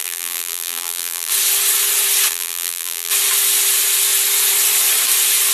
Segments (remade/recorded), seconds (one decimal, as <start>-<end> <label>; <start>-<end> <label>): 0.0-1.3 remade; 1.3-2.3 recorded; 2.3-3.1 remade; 3.1-5.5 recorded